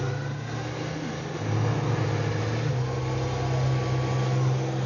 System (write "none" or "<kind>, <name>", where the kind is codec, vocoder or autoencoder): none